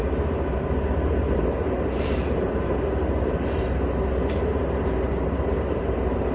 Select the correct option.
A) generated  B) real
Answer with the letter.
A